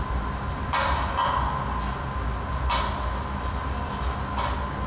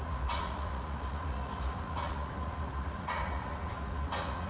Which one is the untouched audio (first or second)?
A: first